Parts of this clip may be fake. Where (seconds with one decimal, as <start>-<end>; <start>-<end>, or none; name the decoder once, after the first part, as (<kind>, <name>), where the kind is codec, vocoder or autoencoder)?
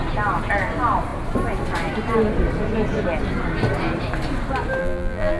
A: 4.8-5.4 (vocoder, BigVGAN v2)